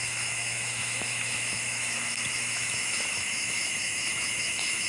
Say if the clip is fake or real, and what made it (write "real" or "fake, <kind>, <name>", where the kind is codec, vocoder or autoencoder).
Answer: fake, autoencoder, DAC-VAE